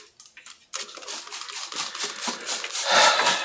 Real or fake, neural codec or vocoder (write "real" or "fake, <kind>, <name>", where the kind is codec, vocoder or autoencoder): real